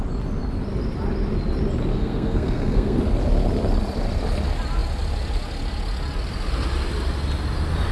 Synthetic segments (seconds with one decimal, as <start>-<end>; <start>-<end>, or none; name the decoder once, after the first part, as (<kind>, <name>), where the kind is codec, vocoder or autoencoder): 1.9-3.0 (codec, SNAC)